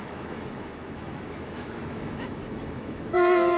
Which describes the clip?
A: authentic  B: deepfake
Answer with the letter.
B